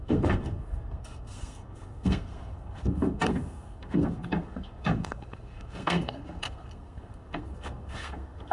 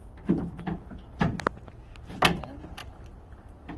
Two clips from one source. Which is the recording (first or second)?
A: second